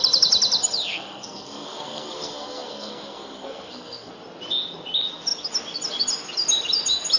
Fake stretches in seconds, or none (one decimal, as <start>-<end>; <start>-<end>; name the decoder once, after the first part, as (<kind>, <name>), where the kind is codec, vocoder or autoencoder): 0.9-4.1 (codec, SNAC)